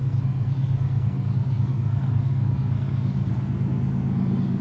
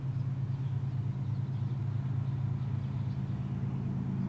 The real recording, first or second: second